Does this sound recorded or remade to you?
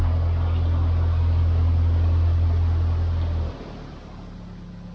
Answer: recorded